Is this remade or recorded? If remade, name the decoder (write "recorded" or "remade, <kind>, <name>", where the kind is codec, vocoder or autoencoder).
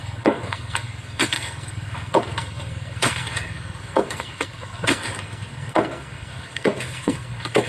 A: remade, codec, SNAC